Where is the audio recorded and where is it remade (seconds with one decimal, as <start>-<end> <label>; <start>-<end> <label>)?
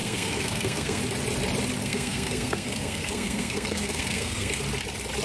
0.0-1.0 remade; 1.0-1.8 recorded; 1.8-4.6 remade; 4.6-5.2 recorded